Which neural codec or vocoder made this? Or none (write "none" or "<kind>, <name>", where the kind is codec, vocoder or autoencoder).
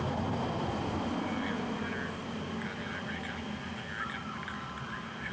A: none